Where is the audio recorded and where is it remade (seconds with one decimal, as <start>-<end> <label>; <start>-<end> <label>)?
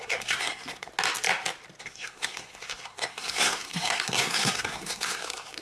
0.0-0.9 remade; 0.9-1.8 recorded; 1.8-5.6 remade